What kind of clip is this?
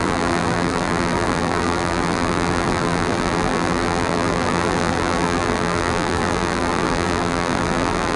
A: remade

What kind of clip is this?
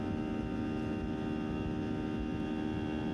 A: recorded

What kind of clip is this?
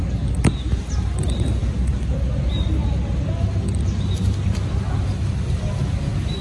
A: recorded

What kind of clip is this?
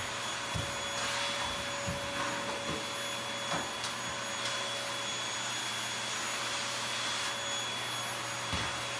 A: recorded